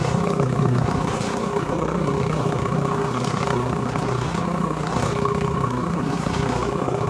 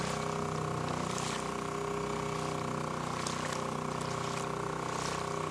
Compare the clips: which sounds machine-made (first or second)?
first